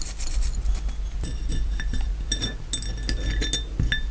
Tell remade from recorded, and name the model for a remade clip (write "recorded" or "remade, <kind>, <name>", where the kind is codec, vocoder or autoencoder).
recorded